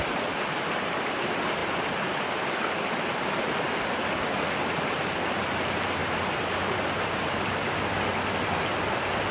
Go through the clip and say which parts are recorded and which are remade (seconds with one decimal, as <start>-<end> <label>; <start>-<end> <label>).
0.0-6.0 recorded; 6.0-7.2 remade; 7.2-9.3 recorded